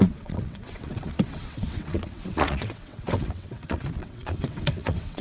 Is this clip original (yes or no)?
no